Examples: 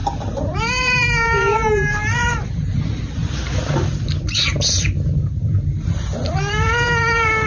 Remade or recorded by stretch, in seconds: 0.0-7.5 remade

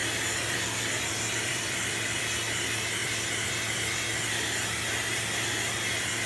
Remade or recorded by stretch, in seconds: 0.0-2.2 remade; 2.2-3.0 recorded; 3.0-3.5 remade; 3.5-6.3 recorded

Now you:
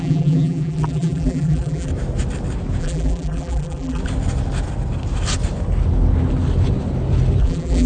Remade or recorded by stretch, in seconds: 0.0-1.9 remade; 1.9-2.8 recorded; 2.8-4.0 remade; 4.0-7.4 recorded; 7.4-7.9 remade

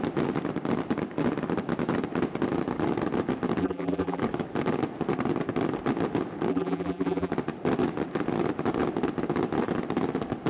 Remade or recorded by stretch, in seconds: 0.0-3.6 recorded; 3.6-4.2 remade; 4.2-6.5 recorded; 6.5-7.3 remade; 7.3-10.5 recorded